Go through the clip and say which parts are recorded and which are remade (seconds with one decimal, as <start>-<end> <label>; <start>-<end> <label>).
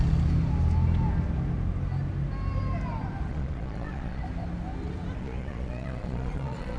0.0-3.3 recorded; 3.3-4.2 remade; 4.2-5.2 recorded; 5.2-6.8 remade